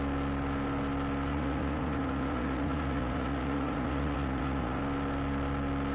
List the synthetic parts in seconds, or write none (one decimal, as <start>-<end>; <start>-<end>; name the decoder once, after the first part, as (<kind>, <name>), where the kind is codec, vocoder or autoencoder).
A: 1.3-4.8 (vocoder, Vocos)